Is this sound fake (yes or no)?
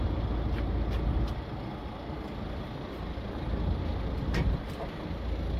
no